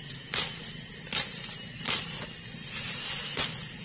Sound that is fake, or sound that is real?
real